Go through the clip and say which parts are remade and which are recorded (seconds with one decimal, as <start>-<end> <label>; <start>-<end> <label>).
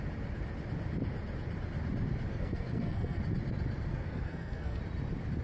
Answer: 0.0-2.3 recorded; 2.3-3.2 remade; 3.2-3.9 recorded; 3.9-4.8 remade; 4.8-5.4 recorded